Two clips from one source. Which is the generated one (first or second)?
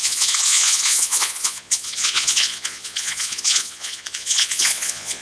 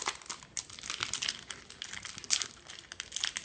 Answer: first